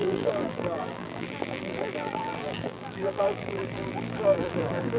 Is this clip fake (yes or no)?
yes